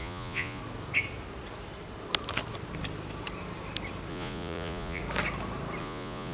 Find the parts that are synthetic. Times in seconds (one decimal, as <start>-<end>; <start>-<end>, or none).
0.0-0.6; 4.1-5.0; 5.8-6.3